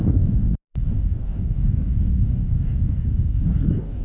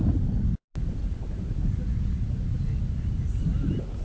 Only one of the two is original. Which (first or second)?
second